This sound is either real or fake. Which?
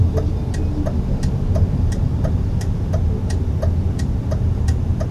real